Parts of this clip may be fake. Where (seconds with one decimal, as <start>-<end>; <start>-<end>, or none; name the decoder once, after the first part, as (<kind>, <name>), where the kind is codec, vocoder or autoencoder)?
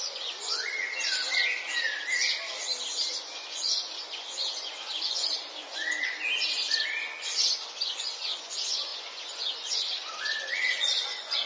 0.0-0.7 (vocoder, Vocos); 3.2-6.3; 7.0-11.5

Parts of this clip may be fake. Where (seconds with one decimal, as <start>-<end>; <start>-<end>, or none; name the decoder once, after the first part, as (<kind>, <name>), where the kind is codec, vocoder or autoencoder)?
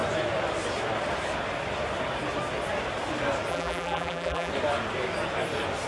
3.5-4.5 (vocoder, BigVGAN v2)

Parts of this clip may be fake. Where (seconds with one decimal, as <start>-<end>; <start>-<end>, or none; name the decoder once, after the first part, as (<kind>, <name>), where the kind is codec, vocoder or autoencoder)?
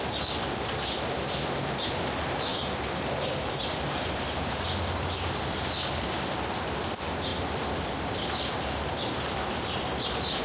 2.5-4.6 (vocoder, BigVGAN v2)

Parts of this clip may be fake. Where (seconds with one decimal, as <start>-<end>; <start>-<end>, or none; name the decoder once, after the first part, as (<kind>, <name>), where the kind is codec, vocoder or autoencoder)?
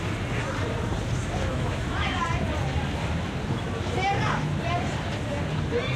1.5-2.2 (autoencoder, DAC-VAE)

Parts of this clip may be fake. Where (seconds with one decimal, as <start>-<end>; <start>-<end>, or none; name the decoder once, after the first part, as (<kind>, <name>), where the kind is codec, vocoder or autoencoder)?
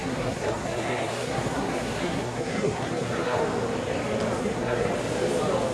0.0-3.4 (codec, SNAC); 4.4-4.9